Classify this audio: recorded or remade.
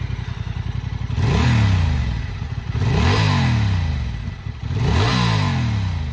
recorded